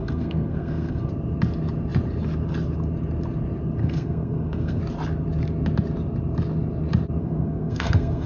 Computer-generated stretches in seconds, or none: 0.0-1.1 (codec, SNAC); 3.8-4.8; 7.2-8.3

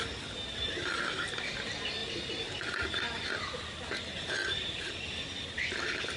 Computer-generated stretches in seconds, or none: none

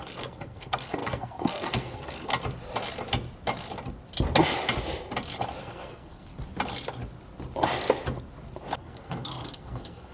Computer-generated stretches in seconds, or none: 0.0-2.3 (codec, SNAC); 5.6-6.3; 8.8-10.1

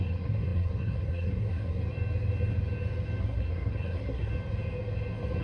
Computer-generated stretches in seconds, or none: 0.0-1.8 (codec, SNAC); 3.2-4.3

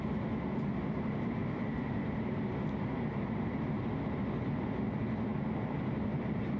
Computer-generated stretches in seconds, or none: none